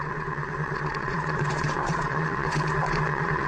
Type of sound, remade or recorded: remade